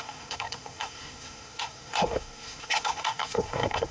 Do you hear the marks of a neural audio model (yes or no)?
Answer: yes